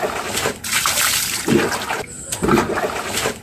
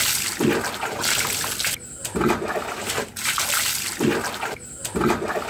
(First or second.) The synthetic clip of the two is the first